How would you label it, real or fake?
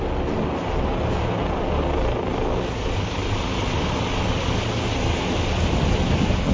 real